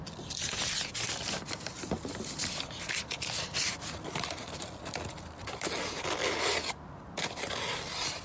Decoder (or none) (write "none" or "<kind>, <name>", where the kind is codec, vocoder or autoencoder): none